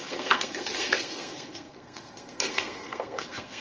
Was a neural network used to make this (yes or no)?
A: yes